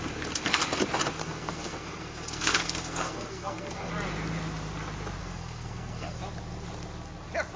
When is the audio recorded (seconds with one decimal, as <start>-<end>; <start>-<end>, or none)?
0.0-1.2; 3.9-5.2; 6.2-7.6